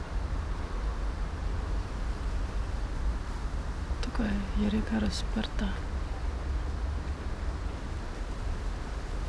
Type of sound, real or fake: real